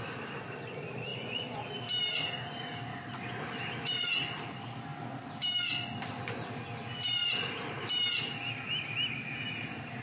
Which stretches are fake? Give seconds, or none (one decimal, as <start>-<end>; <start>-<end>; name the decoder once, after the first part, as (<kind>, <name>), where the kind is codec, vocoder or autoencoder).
1.1-1.7 (vocoder, Vocos)